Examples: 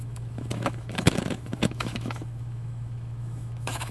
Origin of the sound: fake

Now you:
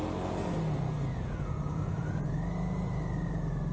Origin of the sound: real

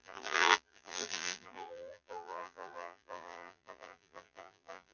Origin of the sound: fake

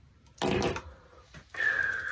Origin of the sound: real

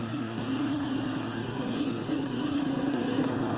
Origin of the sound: fake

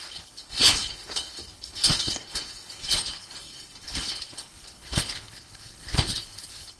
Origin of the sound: fake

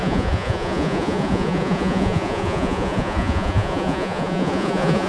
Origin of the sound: fake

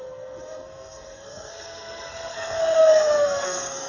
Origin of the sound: fake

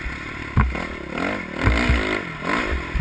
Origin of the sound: real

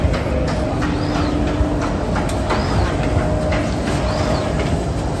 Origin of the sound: real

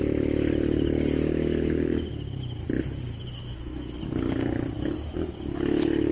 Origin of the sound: real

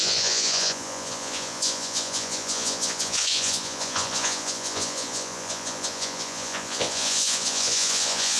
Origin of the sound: fake